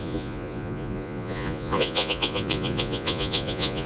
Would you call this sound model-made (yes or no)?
yes